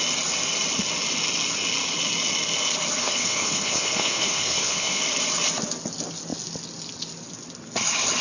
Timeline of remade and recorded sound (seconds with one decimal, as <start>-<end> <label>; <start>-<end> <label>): 0.0-3.0 recorded; 3.0-5.0 remade; 5.0-8.2 recorded